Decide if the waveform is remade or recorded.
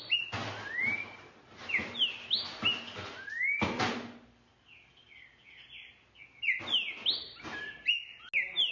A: recorded